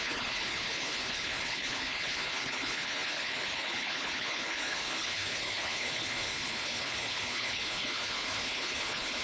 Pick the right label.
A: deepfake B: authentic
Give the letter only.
A